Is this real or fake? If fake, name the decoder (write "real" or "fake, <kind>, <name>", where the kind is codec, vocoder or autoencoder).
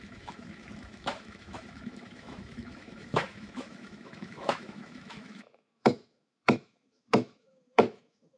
fake, autoencoder, DAC-VAE